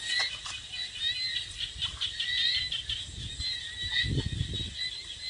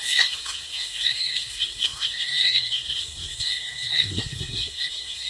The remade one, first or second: second